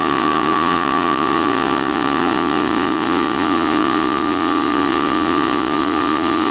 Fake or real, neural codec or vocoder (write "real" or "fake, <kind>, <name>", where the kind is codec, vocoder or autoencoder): fake, vocoder, Vocos